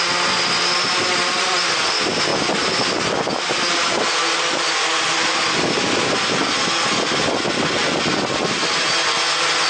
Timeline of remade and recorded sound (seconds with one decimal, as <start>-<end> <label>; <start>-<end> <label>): 0.0-9.7 recorded